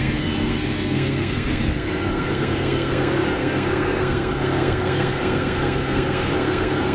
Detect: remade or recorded remade